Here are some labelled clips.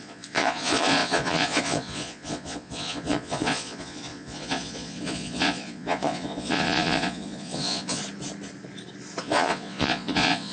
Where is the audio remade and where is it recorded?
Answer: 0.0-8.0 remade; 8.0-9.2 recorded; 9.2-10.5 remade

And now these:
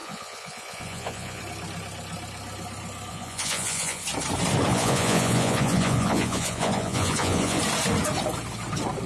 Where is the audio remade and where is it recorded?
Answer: 0.0-1.4 remade; 1.4-3.1 recorded; 3.1-4.0 remade; 4.0-4.7 recorded; 4.7-7.6 remade; 7.6-9.1 recorded